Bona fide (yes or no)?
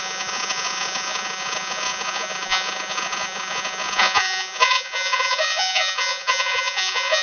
no